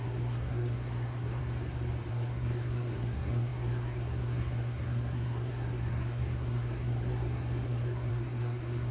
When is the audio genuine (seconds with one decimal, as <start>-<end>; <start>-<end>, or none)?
1.4-2.1